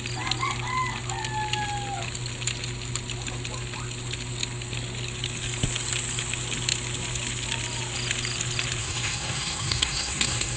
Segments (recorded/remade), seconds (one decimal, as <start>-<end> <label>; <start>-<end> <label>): 0.0-8.8 recorded; 8.8-10.6 remade